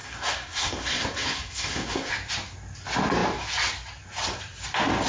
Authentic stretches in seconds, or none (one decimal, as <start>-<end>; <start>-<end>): 2.1-5.1